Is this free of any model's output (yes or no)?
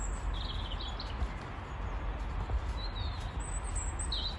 yes